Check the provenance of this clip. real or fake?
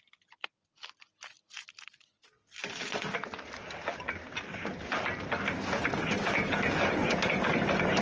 real